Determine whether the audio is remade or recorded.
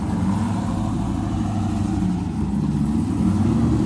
remade